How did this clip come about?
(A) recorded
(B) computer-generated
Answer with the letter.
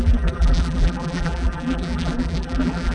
B